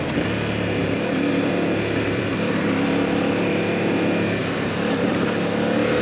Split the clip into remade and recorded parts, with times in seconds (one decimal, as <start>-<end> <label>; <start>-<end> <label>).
0.0-0.8 recorded; 0.8-3.6 remade; 3.6-6.0 recorded